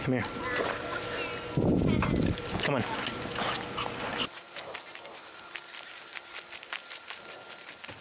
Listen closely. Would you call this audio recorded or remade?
recorded